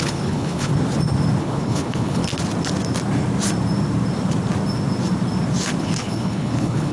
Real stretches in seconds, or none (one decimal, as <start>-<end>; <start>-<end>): 0.7-1.4; 2.2-5.8